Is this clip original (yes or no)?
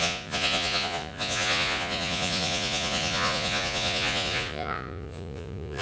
no